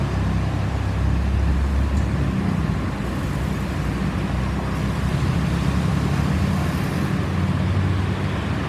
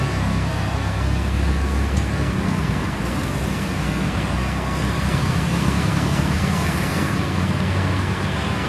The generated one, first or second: second